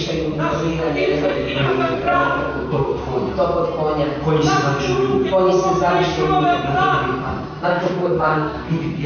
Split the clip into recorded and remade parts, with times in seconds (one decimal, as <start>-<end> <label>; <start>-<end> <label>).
0.0-0.7 recorded; 0.7-3.0 remade; 3.0-7.7 recorded; 7.7-8.7 remade; 8.7-9.1 recorded